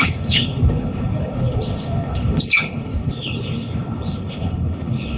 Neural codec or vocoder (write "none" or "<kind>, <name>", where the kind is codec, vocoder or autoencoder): codec, HILCodec